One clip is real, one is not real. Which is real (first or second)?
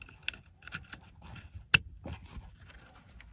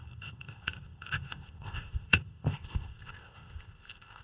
first